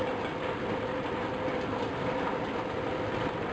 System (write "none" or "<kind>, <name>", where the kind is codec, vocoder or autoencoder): none